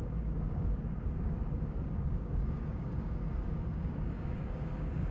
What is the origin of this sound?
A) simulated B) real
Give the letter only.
A